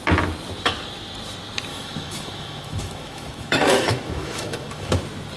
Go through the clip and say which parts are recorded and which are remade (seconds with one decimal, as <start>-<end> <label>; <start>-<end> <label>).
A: 0.0-1.7 recorded; 1.7-4.9 remade; 4.9-5.4 recorded